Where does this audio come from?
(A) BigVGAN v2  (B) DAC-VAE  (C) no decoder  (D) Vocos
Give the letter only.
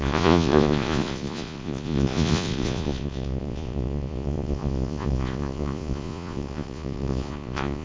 D